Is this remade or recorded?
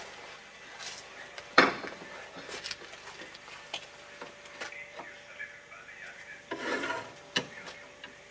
remade